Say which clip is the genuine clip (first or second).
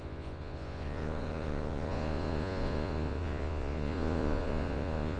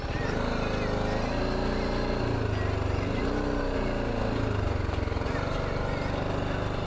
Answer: second